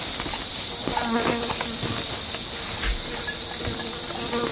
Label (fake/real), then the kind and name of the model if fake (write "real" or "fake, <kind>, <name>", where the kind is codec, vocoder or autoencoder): real